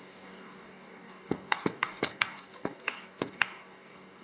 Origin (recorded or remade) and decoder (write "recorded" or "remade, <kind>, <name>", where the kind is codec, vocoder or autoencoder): remade, codec, DAC